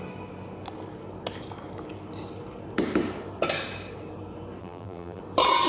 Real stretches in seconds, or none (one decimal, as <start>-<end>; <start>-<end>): 0.0-4.6; 5.2-5.7